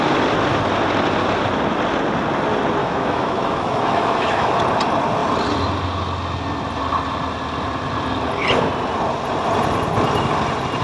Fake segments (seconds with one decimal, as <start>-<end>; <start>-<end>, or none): 2.8-4.6